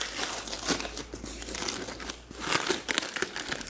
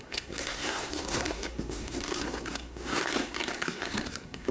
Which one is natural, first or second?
first